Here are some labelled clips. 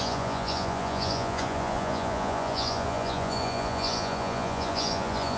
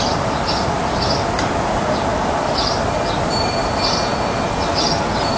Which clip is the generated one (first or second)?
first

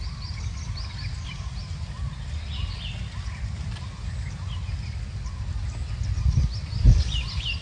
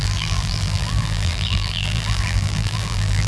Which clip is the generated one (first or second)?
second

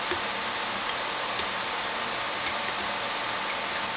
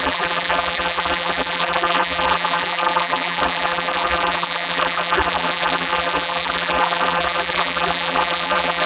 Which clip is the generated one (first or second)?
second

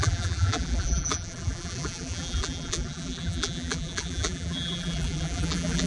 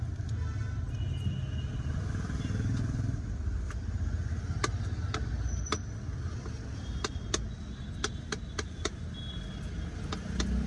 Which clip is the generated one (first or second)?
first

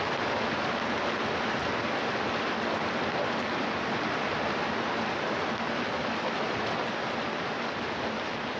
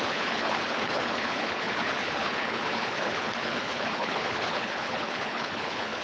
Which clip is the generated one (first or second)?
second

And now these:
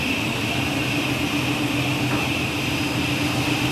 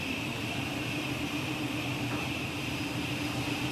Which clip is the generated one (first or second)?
second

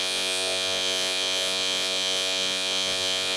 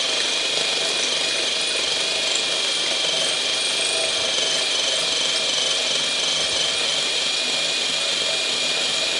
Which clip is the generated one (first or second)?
first